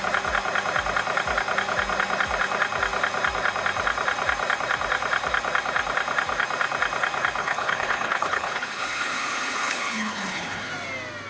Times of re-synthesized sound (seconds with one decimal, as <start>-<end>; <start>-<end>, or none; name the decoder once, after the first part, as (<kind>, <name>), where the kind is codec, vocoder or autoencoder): 7.4-10.7 (codec, HILCodec)